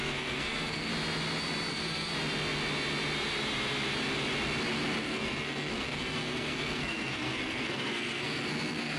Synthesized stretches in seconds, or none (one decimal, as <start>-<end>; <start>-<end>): 0.0-0.9; 1.7-2.1; 5.0-9.0